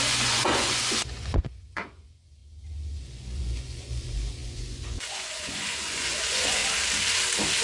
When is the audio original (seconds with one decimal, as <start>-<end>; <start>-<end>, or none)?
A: 6.6-7.6